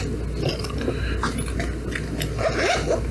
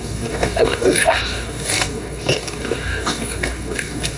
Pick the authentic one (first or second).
first